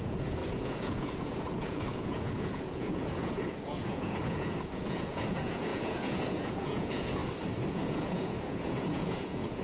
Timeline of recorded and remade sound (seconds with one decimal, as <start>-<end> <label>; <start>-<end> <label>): 0.0-7.2 remade; 7.2-7.7 recorded; 7.7-9.6 remade